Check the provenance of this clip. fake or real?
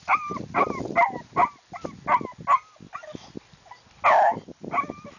real